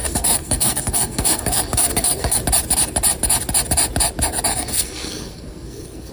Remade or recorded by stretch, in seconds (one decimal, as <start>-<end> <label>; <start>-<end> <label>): 0.0-2.4 remade; 2.4-4.5 recorded; 4.5-6.1 remade